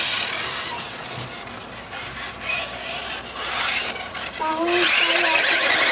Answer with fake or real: real